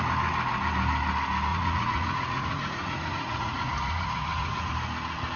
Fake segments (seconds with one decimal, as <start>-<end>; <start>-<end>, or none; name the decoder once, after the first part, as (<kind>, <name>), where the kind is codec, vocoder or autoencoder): 1.5-4.7 (vocoder, Vocos)